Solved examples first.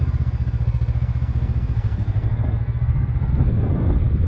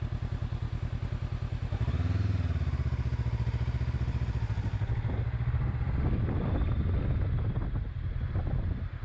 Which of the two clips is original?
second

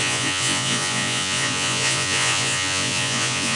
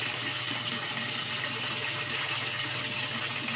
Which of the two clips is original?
second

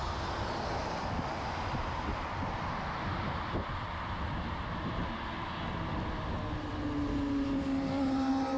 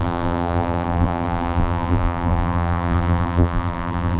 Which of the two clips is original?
first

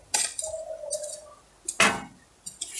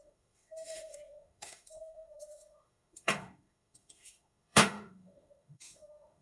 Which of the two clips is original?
first